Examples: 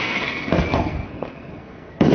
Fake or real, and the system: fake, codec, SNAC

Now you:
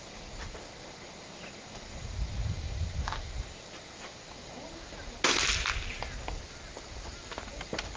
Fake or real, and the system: real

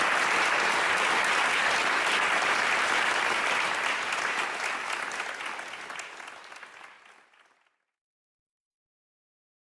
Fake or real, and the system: real